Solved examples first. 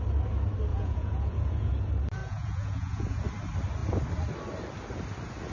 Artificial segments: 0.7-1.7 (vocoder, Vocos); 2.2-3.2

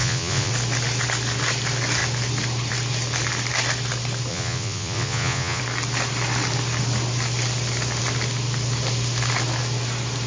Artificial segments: 0.0-0.5 (vocoder, Vocos); 4.3-5.6

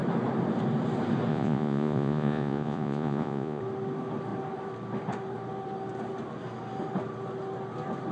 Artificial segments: 1.3-3.6 (vocoder, Vocos)

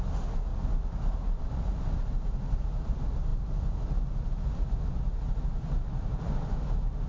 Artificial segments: none

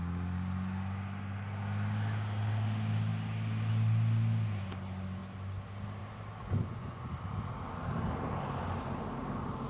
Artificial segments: 6.4-7.1 (vocoder, Vocos)

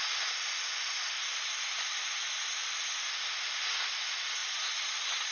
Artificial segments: 4.4-5.3 (vocoder, Vocos)